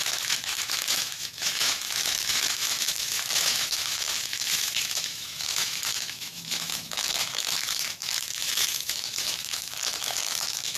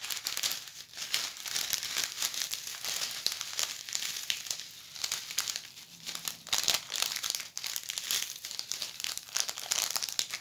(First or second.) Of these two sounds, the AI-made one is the first